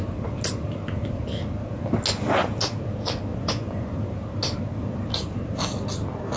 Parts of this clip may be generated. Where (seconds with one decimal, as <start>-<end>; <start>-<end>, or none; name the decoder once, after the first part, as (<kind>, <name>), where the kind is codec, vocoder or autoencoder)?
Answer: 3.3-4.0 (vocoder, Vocos)